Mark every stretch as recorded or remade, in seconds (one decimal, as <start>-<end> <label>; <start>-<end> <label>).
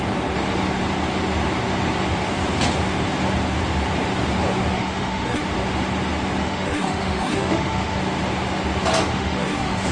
0.0-4.7 recorded; 4.7-5.4 remade; 5.4-6.4 recorded; 6.4-8.0 remade; 8.0-9.1 recorded; 9.1-9.9 remade